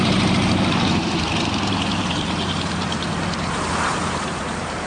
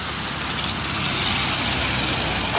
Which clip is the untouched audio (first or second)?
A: second